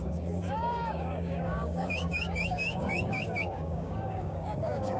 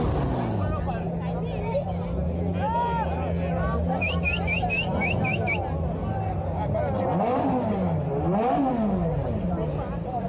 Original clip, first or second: second